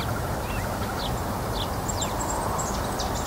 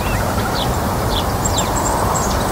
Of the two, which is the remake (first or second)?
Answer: second